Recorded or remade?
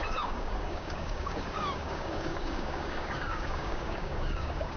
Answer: remade